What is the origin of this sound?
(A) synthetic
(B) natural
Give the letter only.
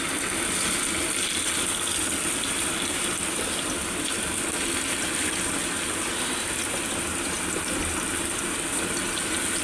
B